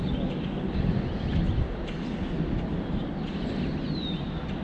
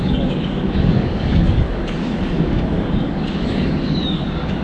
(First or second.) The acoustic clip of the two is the first